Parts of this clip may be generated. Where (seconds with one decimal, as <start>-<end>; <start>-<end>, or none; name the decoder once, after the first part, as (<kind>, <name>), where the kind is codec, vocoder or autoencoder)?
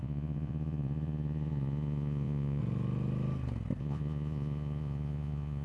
0.0-2.6 (vocoder, Vocos); 3.8-5.6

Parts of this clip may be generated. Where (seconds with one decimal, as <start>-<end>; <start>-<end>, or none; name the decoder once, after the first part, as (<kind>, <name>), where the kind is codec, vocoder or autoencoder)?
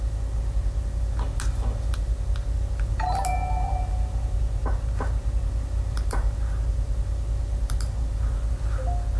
none